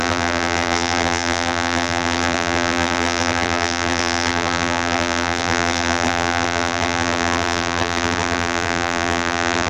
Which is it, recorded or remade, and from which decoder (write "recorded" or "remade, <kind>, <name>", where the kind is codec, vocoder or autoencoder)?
remade, vocoder, BigVGAN v2